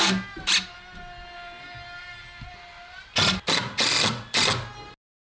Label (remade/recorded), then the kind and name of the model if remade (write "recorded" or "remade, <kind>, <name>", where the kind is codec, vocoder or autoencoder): recorded